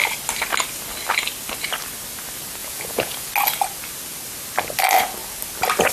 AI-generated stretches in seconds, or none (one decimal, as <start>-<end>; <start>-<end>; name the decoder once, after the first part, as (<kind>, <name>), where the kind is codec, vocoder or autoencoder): 2.6-3.3 (vocoder, Vocos)